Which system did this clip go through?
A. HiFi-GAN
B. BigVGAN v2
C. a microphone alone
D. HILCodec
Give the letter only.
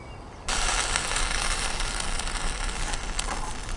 C